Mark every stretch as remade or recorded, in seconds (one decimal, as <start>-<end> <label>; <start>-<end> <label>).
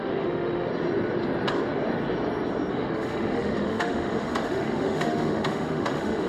0.0-0.7 remade; 0.7-2.7 recorded; 2.7-6.3 remade